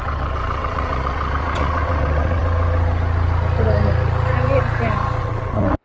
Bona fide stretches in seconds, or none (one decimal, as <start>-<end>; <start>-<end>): 2.4-5.2

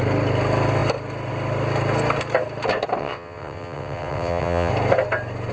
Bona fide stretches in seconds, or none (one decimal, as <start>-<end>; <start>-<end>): 0.0-3.0; 4.7-5.5

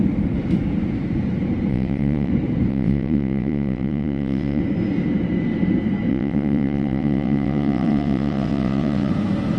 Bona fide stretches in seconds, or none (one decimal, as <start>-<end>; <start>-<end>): 0.0-1.7; 2.3-2.7; 4.6-6.1; 9.1-9.6